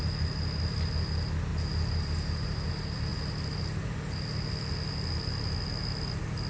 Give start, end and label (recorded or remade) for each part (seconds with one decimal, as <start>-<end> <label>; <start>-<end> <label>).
0.0-6.5 recorded

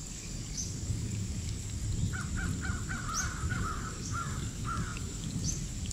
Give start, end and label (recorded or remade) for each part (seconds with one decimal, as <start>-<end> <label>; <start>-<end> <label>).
0.0-1.8 remade; 1.8-3.5 recorded; 3.5-5.9 remade

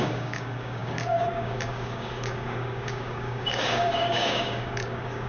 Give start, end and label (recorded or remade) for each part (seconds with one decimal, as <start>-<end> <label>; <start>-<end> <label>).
0.0-5.3 remade

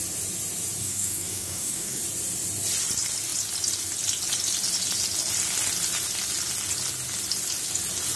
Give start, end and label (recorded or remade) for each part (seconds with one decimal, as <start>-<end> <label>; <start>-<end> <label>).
0.0-0.8 recorded; 0.8-2.0 remade; 2.0-8.2 recorded

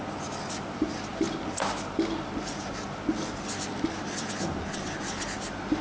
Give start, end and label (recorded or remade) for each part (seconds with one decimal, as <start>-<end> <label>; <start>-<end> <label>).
0.0-5.8 recorded

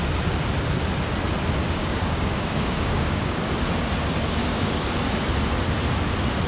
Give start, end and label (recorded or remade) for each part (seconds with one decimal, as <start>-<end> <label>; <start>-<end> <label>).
0.0-1.8 recorded; 1.8-3.5 remade; 3.5-4.4 recorded; 4.4-4.9 remade; 4.9-6.5 recorded